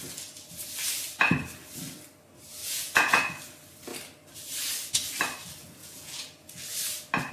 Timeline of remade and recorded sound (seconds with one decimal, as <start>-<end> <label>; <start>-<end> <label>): 0.0-2.6 recorded; 2.6-3.4 remade; 3.4-5.8 recorded; 5.8-6.6 remade; 6.6-7.3 recorded